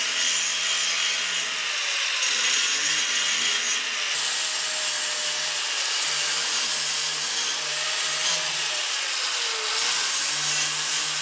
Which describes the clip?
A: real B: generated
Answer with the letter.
A